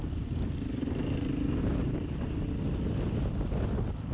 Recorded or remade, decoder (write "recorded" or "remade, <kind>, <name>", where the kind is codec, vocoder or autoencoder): recorded